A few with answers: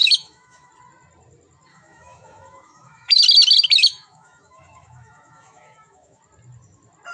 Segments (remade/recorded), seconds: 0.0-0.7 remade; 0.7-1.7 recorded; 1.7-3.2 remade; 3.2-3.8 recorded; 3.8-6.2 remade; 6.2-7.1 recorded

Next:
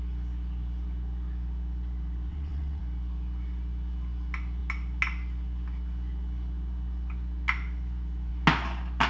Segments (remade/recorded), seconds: 0.0-2.3 recorded; 2.3-2.8 remade; 2.8-9.1 recorded

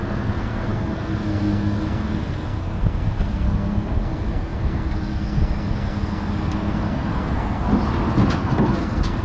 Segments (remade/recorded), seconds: 0.0-7.7 remade; 7.7-8.3 recorded; 8.3-9.2 remade

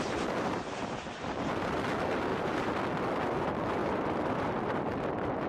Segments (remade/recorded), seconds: 0.0-2.3 recorded; 2.3-2.8 remade; 2.8-3.8 recorded; 3.8-4.5 remade; 4.5-5.5 recorded

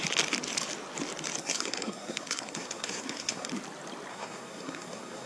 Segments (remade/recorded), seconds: 0.0-1.4 recorded; 1.4-3.5 remade; 3.5-4.1 recorded; 4.1-5.3 remade